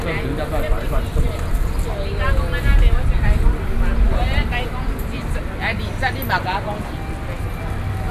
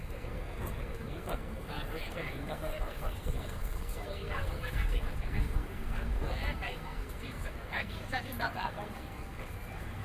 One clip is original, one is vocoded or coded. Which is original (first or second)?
first